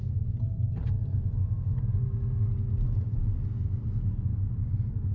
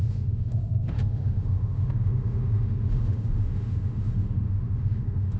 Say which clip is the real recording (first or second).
first